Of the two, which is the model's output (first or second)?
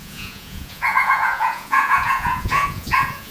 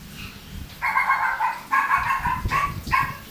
first